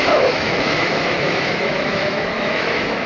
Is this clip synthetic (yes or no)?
yes